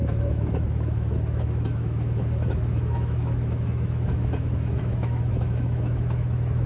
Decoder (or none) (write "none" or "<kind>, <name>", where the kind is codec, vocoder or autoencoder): autoencoder, DAC-VAE